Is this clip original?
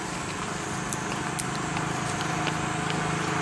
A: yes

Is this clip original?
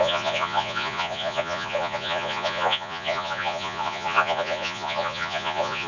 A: no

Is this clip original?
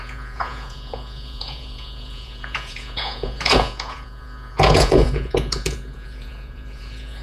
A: no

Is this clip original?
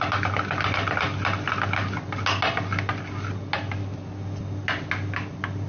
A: yes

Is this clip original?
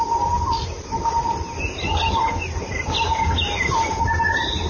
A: yes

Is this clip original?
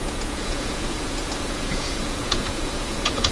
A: no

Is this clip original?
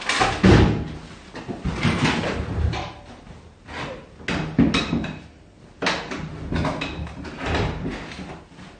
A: yes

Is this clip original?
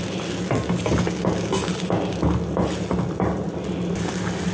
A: yes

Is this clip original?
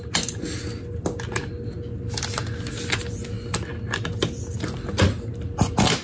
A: yes